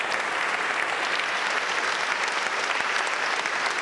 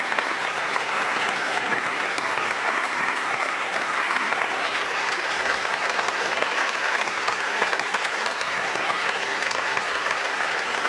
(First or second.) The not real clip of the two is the second